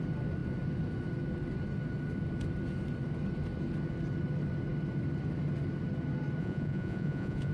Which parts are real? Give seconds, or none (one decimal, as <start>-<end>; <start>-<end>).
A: 0.0-6.4